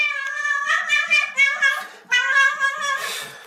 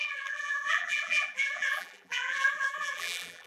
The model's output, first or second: second